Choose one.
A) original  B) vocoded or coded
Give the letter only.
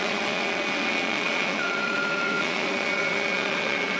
B